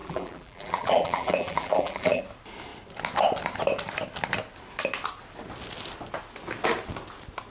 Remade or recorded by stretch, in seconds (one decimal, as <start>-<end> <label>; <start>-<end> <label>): 0.0-2.2 remade; 2.2-7.5 recorded

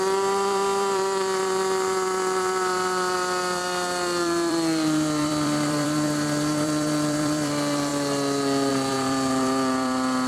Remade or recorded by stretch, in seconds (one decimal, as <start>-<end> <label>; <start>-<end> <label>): 0.0-7.9 remade; 7.9-8.7 recorded; 8.7-10.3 remade